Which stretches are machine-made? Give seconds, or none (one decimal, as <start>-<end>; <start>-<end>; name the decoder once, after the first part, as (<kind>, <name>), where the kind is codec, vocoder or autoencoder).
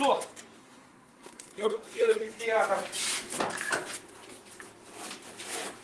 0.6-2.4 (codec, SNAC)